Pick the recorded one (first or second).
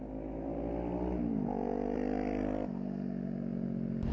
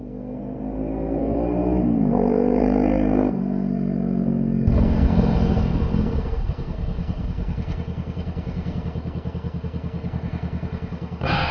first